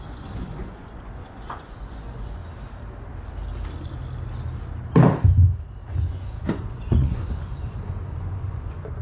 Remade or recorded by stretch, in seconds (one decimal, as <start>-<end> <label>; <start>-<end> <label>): 0.0-2.4 remade; 2.4-5.9 recorded; 5.9-9.0 remade